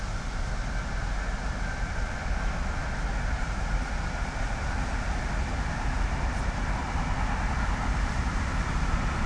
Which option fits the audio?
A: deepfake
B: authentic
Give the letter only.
B